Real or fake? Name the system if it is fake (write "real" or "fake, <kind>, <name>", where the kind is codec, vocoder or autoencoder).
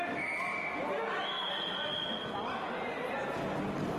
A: real